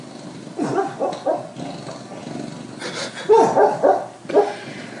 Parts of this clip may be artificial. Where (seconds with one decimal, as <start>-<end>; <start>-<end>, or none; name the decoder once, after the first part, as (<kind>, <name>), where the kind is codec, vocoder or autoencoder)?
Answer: none